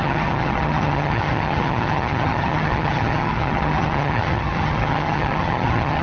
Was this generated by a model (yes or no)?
yes